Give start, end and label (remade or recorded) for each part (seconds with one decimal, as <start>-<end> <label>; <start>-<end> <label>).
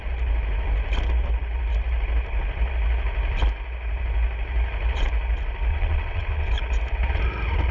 0.0-5.7 recorded; 5.7-6.5 remade; 6.5-7.7 recorded